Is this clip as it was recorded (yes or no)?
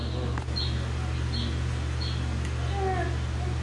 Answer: yes